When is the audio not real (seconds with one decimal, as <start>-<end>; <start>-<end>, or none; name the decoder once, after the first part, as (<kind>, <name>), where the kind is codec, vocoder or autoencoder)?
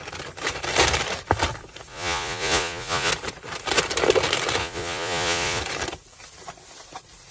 1.9-3.1 (vocoder, Vocos); 4.6-5.6